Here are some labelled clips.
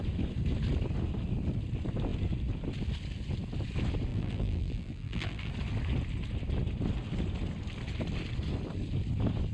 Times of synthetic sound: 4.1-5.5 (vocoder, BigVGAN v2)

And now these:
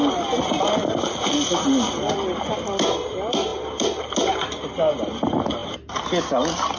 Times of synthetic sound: none

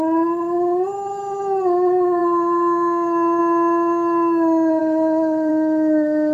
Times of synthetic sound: 4.8-5.5 (vocoder, BigVGAN v2)

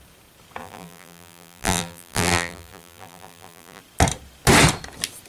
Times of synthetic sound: 0.6-3.8 (vocoder, BigVGAN v2)

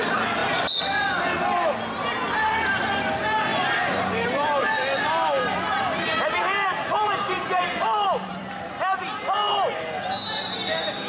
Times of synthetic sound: 0.4-1.2 (vocoder, BigVGAN v2); 3.5-8.7

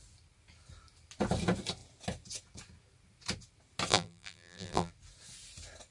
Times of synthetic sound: 3.9-4.9 (vocoder, BigVGAN v2)